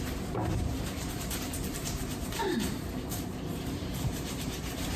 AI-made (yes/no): yes